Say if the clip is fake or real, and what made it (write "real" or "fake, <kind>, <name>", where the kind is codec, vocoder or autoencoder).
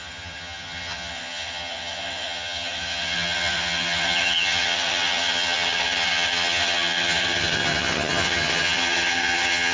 fake, vocoder, HiFi-GAN